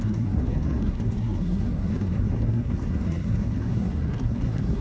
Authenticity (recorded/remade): remade